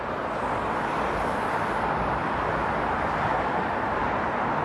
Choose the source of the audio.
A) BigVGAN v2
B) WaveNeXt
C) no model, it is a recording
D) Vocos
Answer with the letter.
C